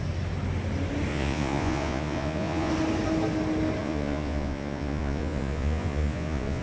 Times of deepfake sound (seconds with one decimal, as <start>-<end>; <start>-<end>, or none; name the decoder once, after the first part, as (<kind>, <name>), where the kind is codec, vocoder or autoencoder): 1.1-2.7 (vocoder, Vocos); 3.8-6.6